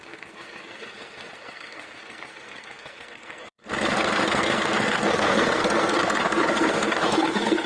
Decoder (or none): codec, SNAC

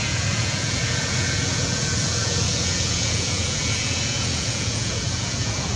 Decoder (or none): vocoder, Vocos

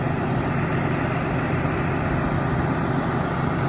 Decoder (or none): vocoder, BigVGAN v2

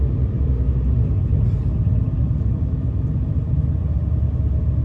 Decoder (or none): none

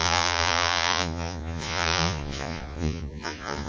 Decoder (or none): vocoder, Vocos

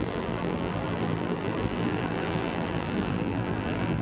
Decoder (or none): vocoder, BigVGAN v2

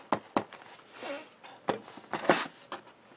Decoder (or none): none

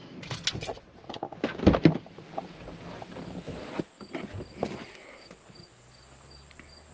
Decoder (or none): none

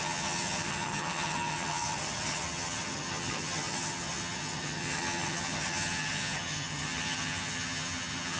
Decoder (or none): vocoder, HiFi-GAN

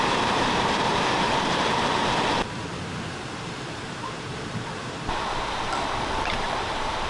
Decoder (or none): vocoder, BigVGAN v2